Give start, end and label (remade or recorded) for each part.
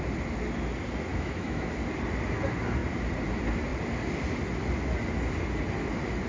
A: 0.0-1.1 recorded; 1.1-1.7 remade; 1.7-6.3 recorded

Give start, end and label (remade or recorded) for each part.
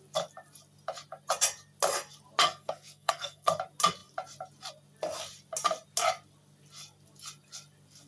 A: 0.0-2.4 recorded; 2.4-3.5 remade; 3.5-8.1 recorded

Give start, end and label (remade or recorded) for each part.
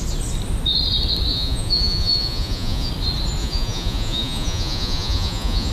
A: 0.0-1.3 recorded; 1.3-2.9 remade; 2.9-3.4 recorded; 3.4-5.7 remade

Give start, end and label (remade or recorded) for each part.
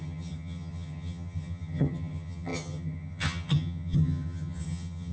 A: 0.0-5.1 remade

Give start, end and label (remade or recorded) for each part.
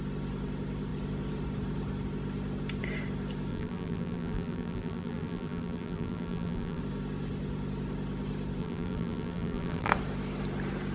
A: 0.0-3.5 recorded; 3.5-6.8 remade; 6.8-8.6 recorded; 8.6-9.9 remade; 9.9-10.9 recorded